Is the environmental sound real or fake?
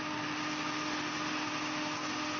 real